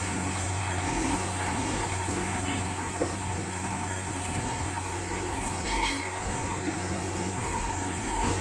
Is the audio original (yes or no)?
no